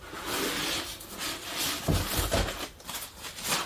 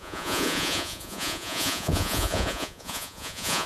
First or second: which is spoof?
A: second